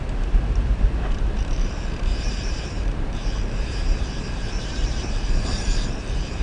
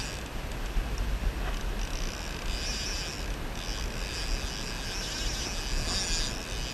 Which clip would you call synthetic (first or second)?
first